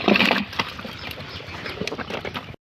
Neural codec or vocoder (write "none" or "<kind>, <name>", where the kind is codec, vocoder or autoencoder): none